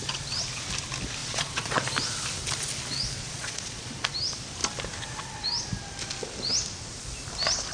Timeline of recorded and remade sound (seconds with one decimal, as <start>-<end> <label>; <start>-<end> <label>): 0.0-1.2 recorded; 1.2-1.8 remade; 1.8-3.2 recorded; 3.2-3.9 remade; 3.9-7.7 recorded